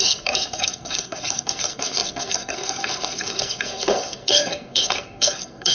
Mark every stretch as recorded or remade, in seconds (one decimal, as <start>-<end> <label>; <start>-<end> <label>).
0.0-5.7 remade